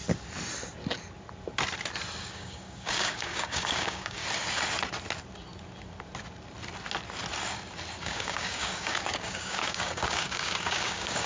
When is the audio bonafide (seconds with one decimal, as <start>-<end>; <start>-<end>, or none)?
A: 0.0-2.2; 4.2-8.0